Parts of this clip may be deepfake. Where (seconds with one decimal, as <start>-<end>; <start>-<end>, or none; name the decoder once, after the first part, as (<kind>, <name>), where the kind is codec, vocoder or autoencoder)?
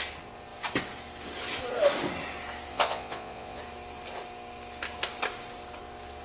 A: 2.7-3.6 (vocoder, Vocos)